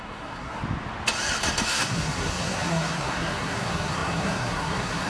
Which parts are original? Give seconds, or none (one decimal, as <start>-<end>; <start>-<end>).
0.6-1.7